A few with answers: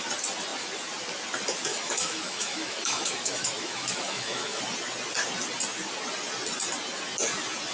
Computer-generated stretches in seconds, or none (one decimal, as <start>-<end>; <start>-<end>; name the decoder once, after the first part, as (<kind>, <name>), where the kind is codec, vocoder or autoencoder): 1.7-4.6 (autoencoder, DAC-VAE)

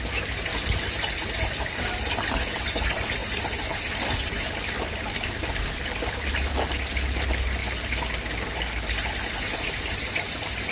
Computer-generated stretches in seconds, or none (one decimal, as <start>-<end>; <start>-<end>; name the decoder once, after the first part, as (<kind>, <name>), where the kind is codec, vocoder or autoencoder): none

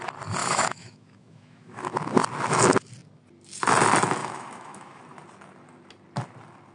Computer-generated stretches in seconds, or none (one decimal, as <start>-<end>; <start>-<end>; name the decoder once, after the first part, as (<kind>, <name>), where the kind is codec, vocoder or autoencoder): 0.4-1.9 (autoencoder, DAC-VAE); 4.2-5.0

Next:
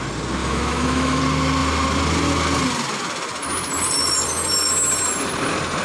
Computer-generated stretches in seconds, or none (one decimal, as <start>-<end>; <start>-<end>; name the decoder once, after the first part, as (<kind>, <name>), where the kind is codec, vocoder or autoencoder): 0.4-1.2 (autoencoder, DAC-VAE)

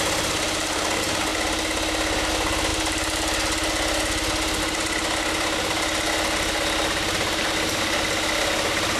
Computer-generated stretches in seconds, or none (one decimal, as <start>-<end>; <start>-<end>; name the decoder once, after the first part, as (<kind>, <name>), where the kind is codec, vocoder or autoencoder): none

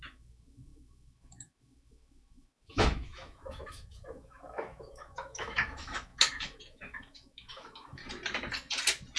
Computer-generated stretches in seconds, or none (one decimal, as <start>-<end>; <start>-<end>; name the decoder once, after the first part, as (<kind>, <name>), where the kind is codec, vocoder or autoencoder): 0.0-8.0 (autoencoder, DAC-VAE)

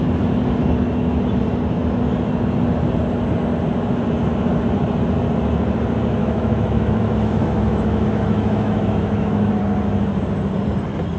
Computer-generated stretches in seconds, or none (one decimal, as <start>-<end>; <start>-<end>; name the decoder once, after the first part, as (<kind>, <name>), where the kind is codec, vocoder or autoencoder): 6.2-9.5 (autoencoder, DAC-VAE)

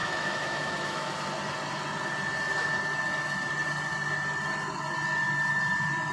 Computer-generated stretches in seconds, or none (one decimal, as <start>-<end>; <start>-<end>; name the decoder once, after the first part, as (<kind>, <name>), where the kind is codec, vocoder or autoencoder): 0.0-1.1 (autoencoder, DAC-VAE)